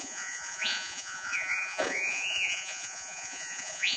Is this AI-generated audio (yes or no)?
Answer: yes